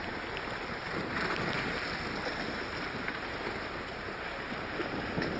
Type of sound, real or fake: real